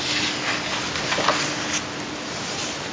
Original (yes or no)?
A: yes